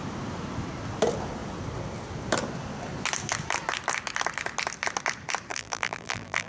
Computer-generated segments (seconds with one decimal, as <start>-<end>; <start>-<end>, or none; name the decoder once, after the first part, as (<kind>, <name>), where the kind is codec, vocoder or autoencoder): 5.5-6.5 (vocoder, BigVGAN v2)